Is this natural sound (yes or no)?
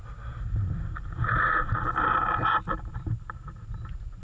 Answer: yes